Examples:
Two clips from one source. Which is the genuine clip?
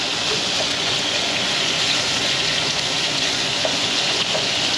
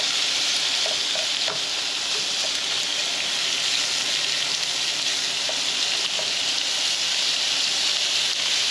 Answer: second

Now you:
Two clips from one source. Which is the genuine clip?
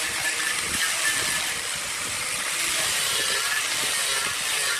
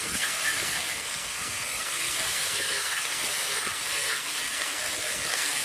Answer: first